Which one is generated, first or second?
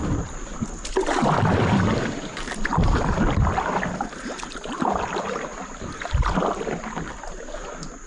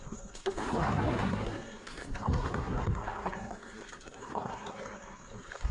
second